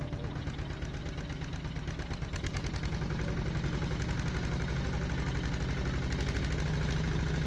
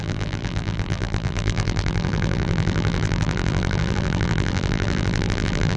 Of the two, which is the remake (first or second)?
second